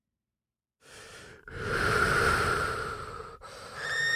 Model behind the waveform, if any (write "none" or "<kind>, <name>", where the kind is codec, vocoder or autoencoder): vocoder, BigVGAN v2